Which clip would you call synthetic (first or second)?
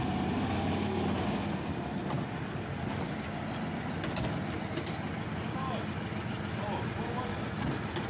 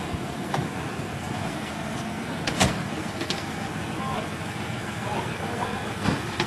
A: second